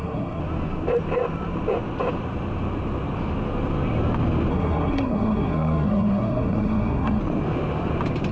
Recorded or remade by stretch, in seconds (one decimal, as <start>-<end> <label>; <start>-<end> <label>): 0.0-0.4 remade; 0.4-4.5 recorded; 4.5-7.2 remade; 7.2-8.3 recorded